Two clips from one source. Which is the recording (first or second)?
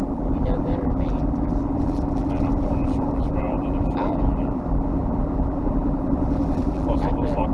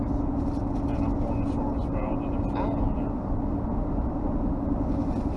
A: second